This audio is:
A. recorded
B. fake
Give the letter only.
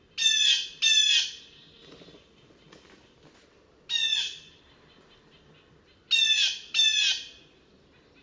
A